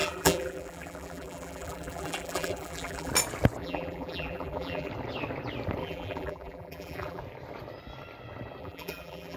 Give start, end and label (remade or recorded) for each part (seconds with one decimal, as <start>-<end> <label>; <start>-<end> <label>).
0.0-3.1 remade; 3.1-3.6 recorded; 3.6-4.9 remade; 4.9-5.8 recorded; 5.8-7.2 remade; 7.2-8.6 recorded; 8.6-9.4 remade